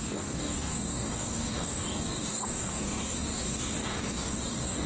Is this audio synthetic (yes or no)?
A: yes